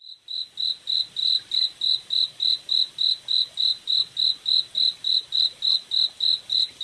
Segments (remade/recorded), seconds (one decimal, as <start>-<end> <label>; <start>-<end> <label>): 0.0-6.8 recorded